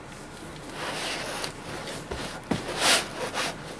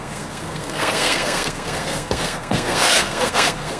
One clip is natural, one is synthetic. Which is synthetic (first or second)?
second